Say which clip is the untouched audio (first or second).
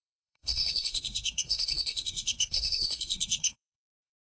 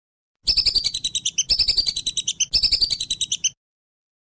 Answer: second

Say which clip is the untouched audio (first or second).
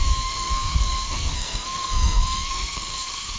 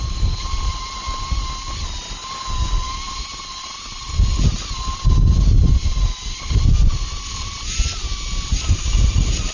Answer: second